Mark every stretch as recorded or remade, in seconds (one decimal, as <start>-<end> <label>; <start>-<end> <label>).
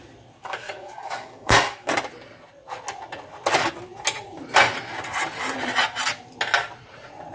0.0-0.4 recorded; 0.4-1.9 remade; 1.9-7.3 recorded